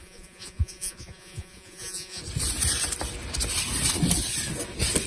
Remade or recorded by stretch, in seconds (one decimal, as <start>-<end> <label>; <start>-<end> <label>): 0.0-2.2 remade; 2.2-5.1 recorded